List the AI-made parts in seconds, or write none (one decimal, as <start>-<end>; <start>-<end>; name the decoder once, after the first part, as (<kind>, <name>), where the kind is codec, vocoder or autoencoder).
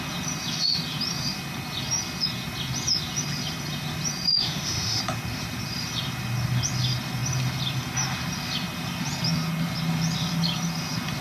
4.4-5.0 (autoencoder, DAC-VAE)